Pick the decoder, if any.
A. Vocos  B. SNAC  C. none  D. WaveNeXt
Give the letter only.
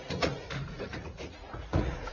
A